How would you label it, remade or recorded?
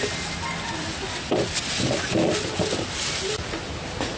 recorded